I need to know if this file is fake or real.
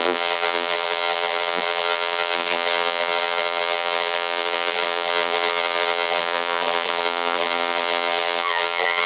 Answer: fake